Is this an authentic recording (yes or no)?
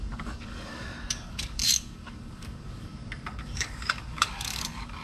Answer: no